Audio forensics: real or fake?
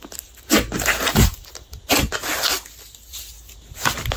real